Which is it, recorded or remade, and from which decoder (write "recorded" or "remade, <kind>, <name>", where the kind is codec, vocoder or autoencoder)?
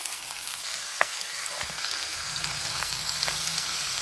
remade, codec, SNAC